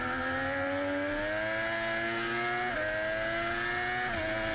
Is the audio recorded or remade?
recorded